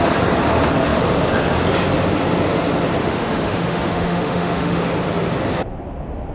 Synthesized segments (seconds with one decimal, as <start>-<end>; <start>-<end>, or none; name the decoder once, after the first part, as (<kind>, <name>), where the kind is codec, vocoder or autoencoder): 3.0-4.8 (autoencoder, DAC-VAE)